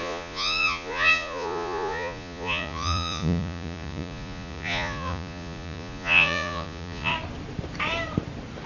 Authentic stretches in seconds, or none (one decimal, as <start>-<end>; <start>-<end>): 7.1-8.7